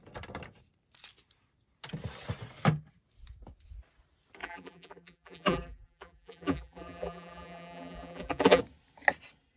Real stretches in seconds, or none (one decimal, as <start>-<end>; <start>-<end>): 0.0-4.4; 8.6-9.6